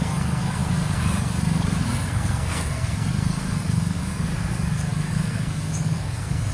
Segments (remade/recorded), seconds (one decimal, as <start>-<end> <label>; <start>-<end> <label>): 0.0-6.5 remade